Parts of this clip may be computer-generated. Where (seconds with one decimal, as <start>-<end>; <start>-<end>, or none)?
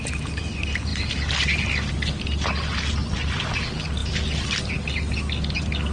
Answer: none